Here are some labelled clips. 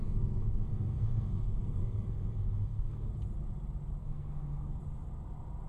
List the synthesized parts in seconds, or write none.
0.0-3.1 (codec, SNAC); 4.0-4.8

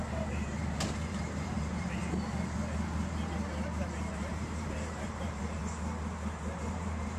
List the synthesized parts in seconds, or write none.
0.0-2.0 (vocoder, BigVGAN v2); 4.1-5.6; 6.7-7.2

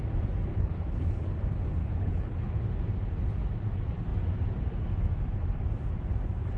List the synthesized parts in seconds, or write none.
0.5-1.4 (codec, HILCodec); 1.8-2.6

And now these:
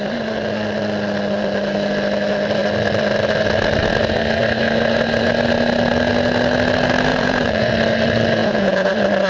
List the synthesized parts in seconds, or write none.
7.1-7.7 (vocoder, Vocos); 8.4-8.9

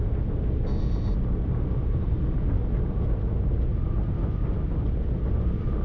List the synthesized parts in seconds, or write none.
none

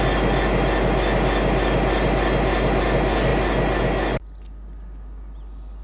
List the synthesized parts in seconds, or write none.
none

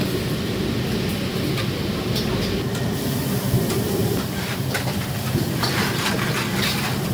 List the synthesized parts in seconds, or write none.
1.3-3.6 (vocoder, BigVGAN v2); 4.0-7.1